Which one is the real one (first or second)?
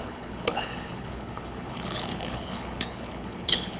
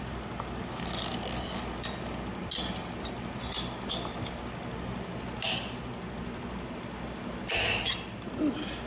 second